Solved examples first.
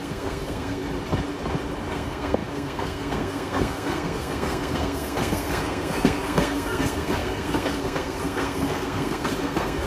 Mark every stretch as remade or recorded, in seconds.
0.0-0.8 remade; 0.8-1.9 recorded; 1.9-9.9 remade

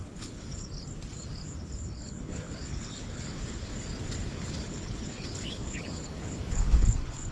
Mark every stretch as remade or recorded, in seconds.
0.0-0.5 remade; 0.5-1.6 recorded; 1.6-3.7 remade; 3.7-4.3 recorded; 4.3-7.3 remade

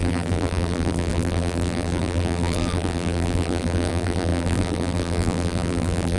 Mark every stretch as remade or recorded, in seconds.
0.0-6.2 remade

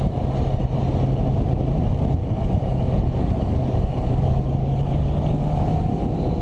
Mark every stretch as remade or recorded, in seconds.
0.0-2.2 recorded; 2.2-6.0 remade; 6.0-6.4 recorded

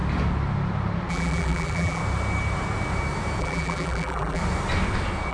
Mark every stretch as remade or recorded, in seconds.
0.0-1.1 recorded; 1.1-2.0 remade; 2.0-3.4 recorded; 3.4-4.4 remade; 4.4-5.3 recorded

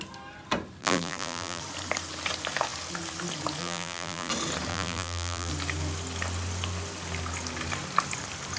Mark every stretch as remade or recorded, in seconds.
0.0-0.8 recorded; 0.8-1.6 remade; 1.6-3.6 recorded; 3.6-4.3 remade; 4.3-4.7 recorded; 4.7-5.5 remade; 5.5-8.6 recorded

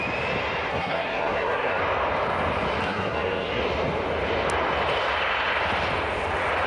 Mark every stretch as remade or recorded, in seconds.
0.0-0.7 recorded; 0.7-1.8 remade; 1.8-2.8 recorded; 2.8-3.6 remade; 3.6-6.7 recorded